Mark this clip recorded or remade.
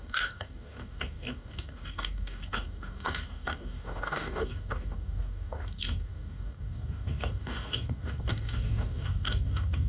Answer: remade